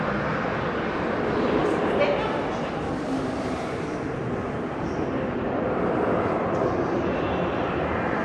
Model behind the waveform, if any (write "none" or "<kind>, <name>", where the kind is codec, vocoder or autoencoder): none